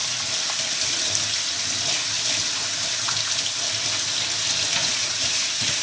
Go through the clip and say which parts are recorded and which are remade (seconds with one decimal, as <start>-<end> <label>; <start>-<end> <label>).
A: 0.0-4.8 recorded; 4.8-5.8 remade